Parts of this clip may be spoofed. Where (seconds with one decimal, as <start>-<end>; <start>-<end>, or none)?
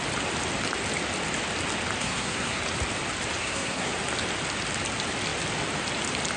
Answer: 2.0-2.6; 3.4-3.9